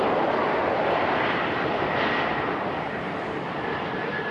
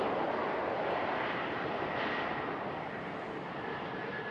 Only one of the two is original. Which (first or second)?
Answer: second